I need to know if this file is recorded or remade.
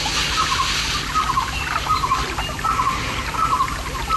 recorded